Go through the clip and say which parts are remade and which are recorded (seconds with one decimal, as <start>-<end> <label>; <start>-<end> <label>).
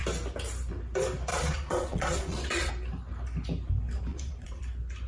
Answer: 0.0-1.3 recorded; 1.3-2.7 remade; 2.7-4.1 recorded; 4.1-4.6 remade; 4.6-5.1 recorded